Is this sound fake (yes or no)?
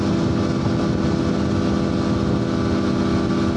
no